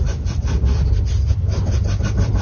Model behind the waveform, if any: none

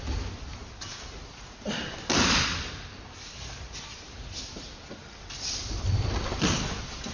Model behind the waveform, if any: none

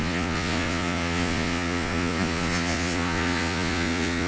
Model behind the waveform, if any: vocoder, Vocos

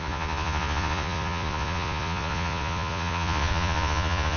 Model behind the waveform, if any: vocoder, Vocos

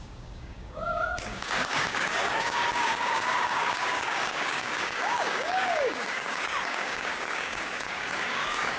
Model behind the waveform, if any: codec, DAC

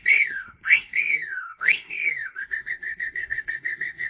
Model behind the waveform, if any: codec, SNAC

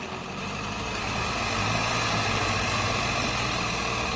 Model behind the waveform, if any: none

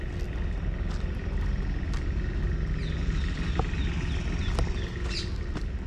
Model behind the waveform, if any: none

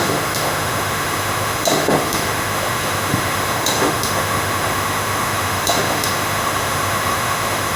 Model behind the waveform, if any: autoencoder, DAC-VAE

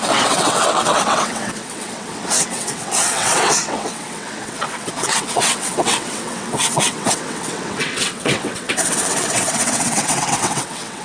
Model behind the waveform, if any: vocoder, WaveNeXt